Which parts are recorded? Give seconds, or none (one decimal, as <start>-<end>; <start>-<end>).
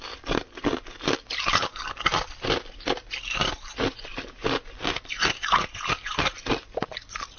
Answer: 0.0-7.4